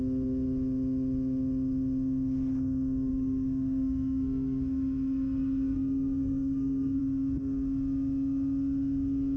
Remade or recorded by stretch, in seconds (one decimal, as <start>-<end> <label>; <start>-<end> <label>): 0.0-3.1 recorded; 3.1-7.0 remade; 7.0-9.4 recorded